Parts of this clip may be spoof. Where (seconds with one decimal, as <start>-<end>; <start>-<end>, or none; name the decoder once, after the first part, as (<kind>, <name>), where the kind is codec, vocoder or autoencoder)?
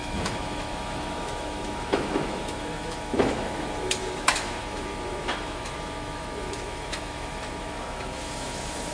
0.0-8.9 (autoencoder, DAC-VAE)